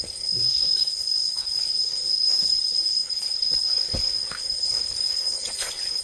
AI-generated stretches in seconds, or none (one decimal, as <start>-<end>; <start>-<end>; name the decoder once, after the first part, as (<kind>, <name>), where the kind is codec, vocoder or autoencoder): 0.0-6.0 (codec, HILCodec)